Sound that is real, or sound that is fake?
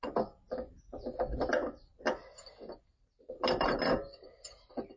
real